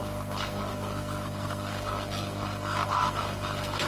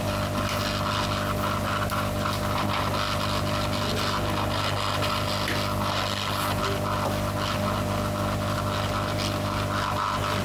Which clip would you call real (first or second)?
second